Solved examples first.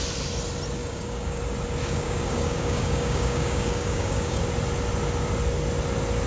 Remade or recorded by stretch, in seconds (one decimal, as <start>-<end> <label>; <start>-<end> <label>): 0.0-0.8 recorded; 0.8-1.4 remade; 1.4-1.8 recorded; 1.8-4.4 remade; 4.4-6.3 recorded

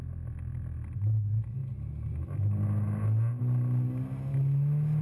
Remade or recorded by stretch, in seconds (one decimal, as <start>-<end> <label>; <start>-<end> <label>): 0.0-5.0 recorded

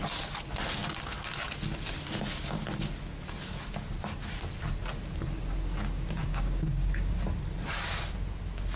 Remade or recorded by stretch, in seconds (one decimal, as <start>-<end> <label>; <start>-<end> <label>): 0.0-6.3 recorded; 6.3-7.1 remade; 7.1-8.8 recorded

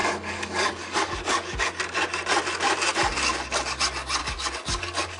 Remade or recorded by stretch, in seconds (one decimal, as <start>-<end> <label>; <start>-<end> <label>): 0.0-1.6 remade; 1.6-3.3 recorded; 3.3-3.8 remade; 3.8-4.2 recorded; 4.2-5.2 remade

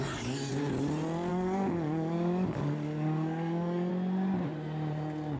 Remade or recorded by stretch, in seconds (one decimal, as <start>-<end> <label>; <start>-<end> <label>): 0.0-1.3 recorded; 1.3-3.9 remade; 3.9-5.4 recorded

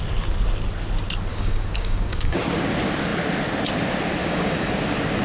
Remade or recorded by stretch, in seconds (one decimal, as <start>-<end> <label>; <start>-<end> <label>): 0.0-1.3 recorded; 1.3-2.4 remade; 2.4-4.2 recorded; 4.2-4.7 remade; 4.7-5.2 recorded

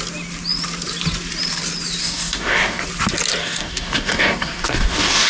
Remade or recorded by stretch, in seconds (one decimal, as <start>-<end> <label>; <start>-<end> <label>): 0.0-2.0 recorded; 2.0-2.8 remade; 2.8-3.4 recorded; 3.4-5.3 remade